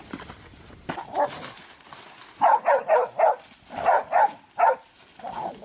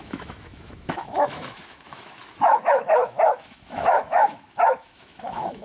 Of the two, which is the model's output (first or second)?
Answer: second